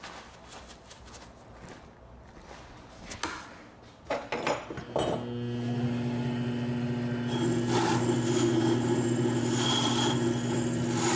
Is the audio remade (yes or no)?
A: no